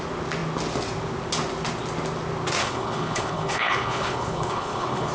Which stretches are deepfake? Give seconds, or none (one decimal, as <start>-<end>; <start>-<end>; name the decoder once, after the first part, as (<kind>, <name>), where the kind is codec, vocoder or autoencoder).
2.6-5.1 (codec, HILCodec)